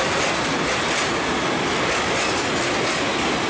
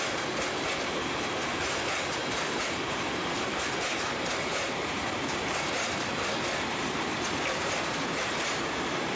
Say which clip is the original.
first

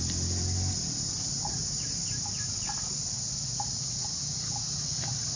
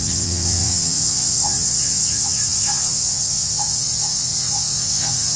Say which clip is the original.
first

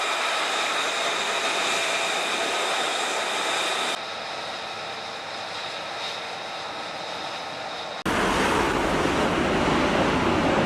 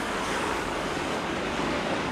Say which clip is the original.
first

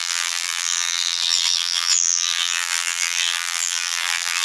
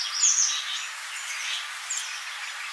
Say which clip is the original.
second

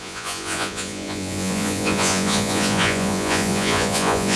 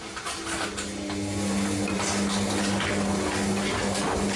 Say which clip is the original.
second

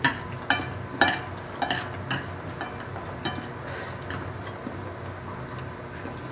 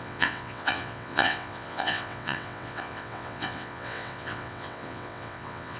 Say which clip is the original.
first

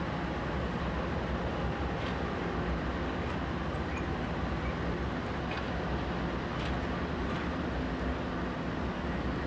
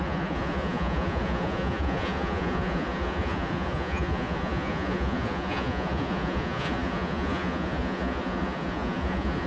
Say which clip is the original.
first